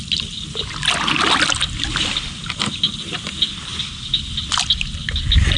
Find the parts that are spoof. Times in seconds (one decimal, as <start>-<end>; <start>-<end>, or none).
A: none